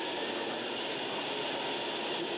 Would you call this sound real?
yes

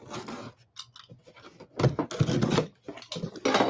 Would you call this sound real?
yes